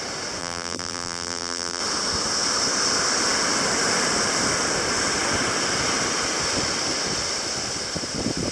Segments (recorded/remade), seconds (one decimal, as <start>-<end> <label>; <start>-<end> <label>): 0.0-0.4 recorded; 0.4-1.8 remade; 1.8-8.5 recorded